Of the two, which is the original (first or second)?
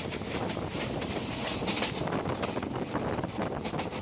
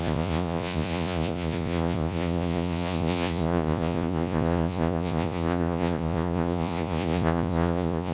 first